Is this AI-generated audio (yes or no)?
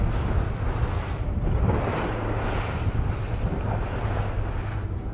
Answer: no